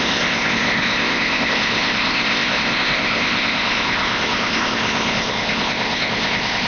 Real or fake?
fake